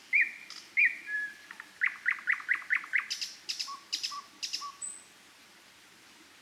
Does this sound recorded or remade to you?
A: recorded